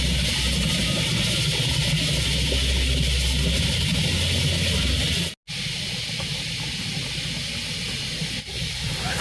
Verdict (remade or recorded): recorded